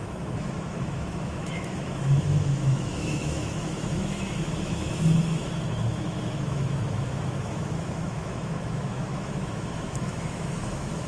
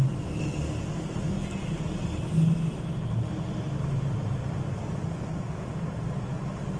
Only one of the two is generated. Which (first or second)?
first